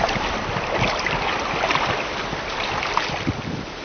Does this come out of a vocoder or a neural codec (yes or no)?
yes